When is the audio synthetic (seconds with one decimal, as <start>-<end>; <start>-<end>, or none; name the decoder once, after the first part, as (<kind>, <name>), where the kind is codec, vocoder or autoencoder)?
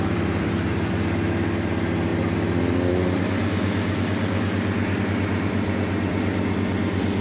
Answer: 0.0-7.2 (vocoder, BigVGAN v2)